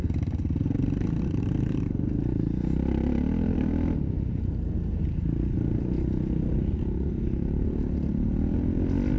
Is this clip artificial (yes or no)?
no